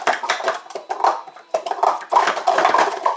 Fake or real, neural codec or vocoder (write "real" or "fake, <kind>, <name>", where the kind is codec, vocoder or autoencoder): fake, vocoder, BigVGAN v2